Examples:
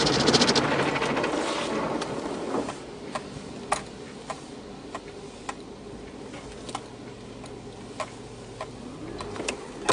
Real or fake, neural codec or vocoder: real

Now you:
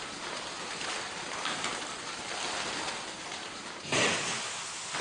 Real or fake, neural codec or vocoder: real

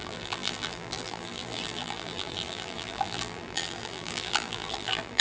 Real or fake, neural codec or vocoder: fake, vocoder, BigVGAN v2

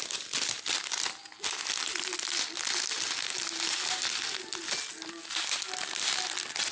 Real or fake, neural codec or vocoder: real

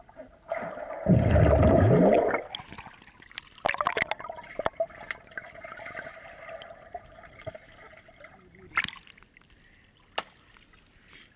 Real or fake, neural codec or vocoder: real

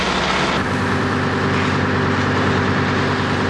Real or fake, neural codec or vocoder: real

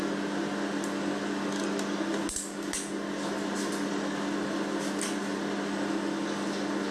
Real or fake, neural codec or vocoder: real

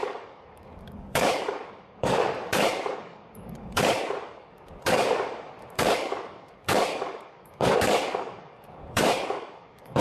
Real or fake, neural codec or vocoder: fake, codec, DAC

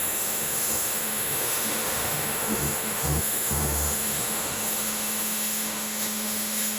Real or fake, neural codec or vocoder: fake, autoencoder, DAC-VAE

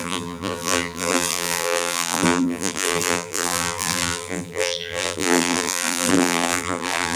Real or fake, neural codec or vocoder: fake, vocoder, BigVGAN v2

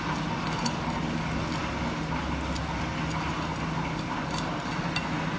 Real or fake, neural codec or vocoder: real